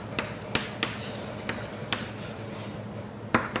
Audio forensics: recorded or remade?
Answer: recorded